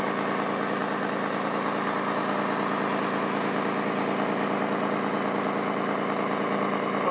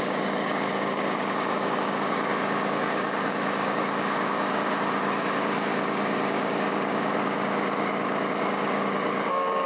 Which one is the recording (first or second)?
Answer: first